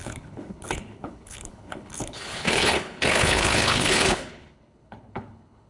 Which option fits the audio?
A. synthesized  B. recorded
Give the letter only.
A